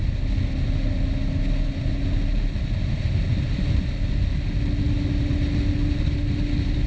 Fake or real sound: real